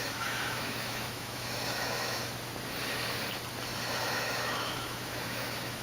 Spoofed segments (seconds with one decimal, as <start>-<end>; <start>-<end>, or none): 0.0-2.2; 4.0-5.8